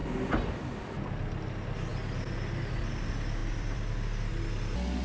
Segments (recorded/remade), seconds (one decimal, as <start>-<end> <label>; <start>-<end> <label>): 0.0-3.4 recorded; 3.4-4.4 remade; 4.4-5.0 recorded